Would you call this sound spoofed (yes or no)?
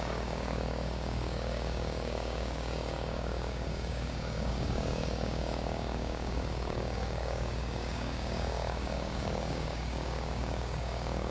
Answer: yes